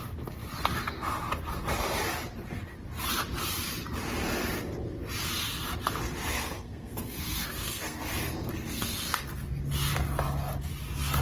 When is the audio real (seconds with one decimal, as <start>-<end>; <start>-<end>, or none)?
0.0-6.3; 9.3-11.2